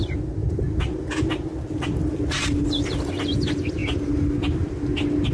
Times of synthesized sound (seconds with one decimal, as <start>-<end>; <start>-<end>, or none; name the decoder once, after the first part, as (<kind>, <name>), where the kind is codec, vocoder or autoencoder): none